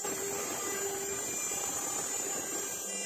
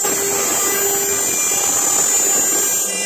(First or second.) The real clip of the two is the second